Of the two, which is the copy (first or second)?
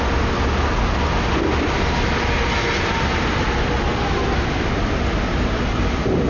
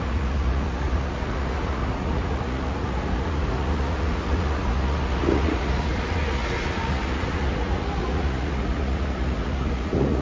second